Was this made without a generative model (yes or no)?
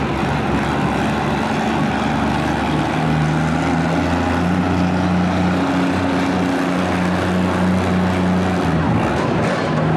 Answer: yes